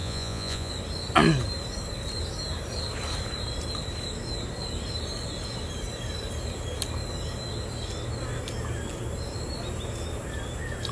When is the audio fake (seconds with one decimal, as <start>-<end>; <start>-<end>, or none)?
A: 0.0-0.7